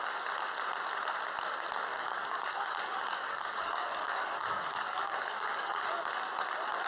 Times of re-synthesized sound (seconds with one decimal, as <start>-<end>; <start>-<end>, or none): 1.9-6.0